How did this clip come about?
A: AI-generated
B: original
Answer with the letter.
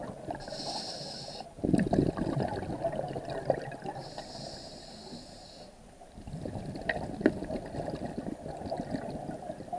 B